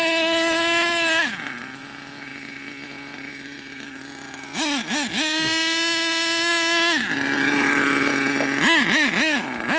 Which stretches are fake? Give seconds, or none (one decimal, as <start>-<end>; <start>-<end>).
none